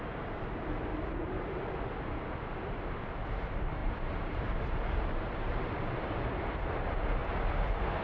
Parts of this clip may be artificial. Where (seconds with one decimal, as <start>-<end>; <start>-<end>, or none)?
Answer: 0.9-1.7; 3.8-5.9

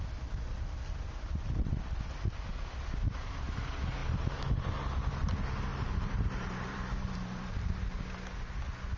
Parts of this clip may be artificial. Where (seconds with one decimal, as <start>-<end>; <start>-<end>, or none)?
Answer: 5.7-8.0

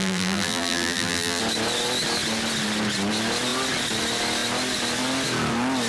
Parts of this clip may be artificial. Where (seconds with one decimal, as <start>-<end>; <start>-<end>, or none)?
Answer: 0.0-1.4

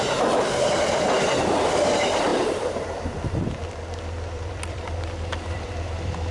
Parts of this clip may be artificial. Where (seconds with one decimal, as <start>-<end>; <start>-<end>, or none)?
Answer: 2.3-6.3